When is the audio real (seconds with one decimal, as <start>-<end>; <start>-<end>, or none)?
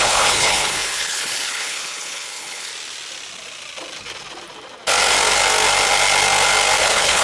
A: 2.7-6.8